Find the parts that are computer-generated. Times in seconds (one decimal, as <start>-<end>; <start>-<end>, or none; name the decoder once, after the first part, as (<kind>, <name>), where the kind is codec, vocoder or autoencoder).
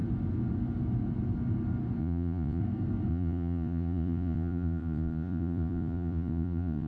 2.0-2.6 (vocoder, Vocos); 3.1-6.9